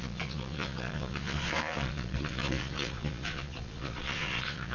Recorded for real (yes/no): no